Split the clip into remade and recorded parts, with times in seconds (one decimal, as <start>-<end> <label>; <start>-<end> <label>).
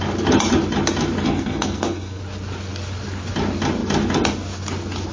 0.0-1.2 recorded; 1.2-2.2 remade; 2.2-5.1 recorded